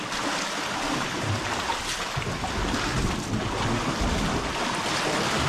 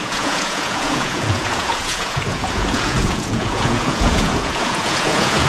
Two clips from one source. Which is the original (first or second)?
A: first